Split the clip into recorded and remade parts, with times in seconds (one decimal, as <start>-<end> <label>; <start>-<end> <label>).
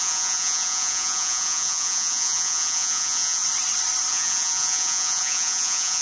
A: 0.0-3.4 remade; 3.4-4.1 recorded; 4.1-6.0 remade